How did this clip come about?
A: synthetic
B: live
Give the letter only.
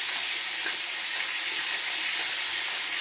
B